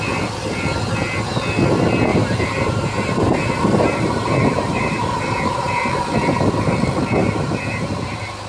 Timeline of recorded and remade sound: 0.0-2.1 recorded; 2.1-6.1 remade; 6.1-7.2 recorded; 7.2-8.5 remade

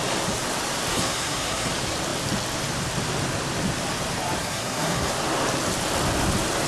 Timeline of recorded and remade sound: 0.0-0.9 recorded; 0.9-1.7 remade; 1.7-4.4 recorded; 4.4-5.1 remade; 5.1-6.7 recorded

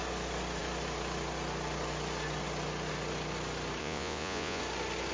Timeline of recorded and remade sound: 0.0-3.8 recorded; 3.8-4.6 remade; 4.6-5.1 recorded

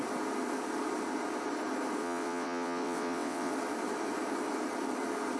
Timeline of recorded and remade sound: 0.0-2.0 recorded; 2.0-3.5 remade; 3.5-5.4 recorded

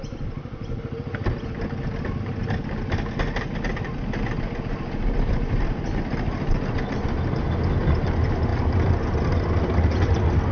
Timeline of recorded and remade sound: 0.0-10.5 recorded

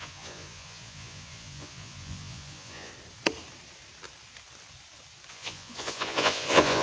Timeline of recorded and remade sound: 0.0-2.9 remade; 2.9-5.3 recorded; 5.3-6.8 remade